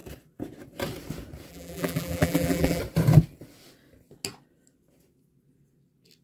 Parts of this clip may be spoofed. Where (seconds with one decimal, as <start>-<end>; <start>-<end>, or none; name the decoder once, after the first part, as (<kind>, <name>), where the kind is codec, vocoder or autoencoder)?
1.5-2.8 (vocoder, BigVGAN v2)